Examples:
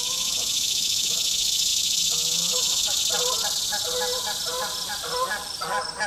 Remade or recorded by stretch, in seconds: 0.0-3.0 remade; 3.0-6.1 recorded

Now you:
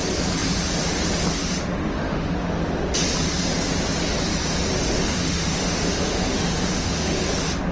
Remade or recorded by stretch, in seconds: 0.0-1.4 recorded; 1.4-2.3 remade; 2.3-4.9 recorded; 4.9-7.2 remade; 7.2-7.7 recorded

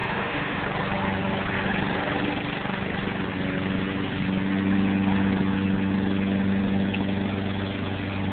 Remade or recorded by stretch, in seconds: 0.0-0.6 remade; 0.6-8.3 recorded

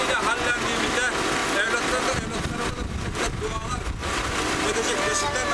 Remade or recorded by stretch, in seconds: 0.0-5.5 recorded

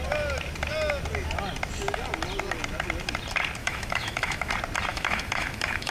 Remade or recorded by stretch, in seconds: 0.0-3.6 recorded; 3.6-4.5 remade; 4.5-4.9 recorded; 4.9-5.9 remade

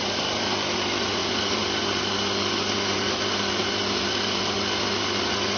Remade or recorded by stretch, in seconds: 0.0-5.6 recorded